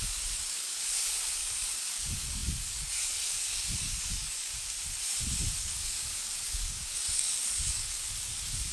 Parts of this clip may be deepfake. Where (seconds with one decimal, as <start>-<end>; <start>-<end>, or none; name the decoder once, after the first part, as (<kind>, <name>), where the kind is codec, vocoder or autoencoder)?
0.0-4.5 (codec, DAC); 5.6-8.7